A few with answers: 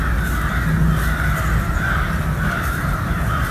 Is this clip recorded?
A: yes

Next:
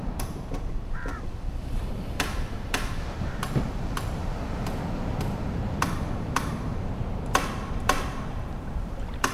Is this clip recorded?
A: no